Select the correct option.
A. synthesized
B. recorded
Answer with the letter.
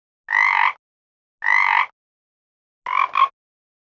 B